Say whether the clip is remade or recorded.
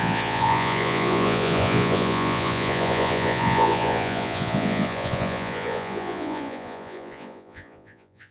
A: remade